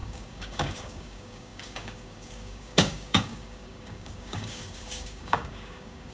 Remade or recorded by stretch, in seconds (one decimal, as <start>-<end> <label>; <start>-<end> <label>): 0.0-6.1 remade